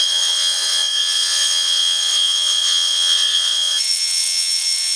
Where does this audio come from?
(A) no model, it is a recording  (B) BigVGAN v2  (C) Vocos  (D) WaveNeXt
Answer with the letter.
D